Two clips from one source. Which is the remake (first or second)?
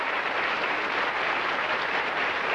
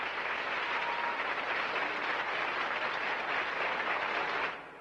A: first